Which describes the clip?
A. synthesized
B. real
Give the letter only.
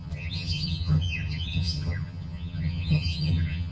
A